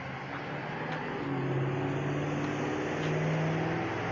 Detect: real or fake real